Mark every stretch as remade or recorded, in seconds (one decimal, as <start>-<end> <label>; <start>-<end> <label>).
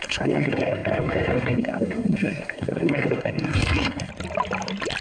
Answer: 0.0-4.1 remade; 4.1-5.0 recorded